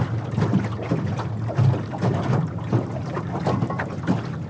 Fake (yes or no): no